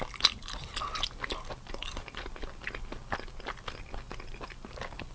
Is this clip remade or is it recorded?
recorded